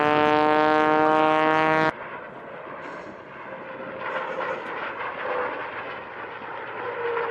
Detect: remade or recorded recorded